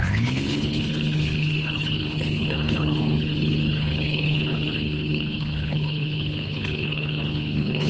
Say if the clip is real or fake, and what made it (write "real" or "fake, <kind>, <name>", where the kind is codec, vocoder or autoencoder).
fake, codec, HILCodec